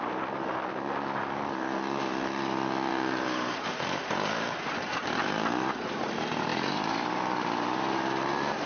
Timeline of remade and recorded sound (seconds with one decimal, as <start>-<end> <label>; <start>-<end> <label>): 0.0-2.9 recorded; 2.9-6.0 remade; 6.0-6.5 recorded; 6.5-8.7 remade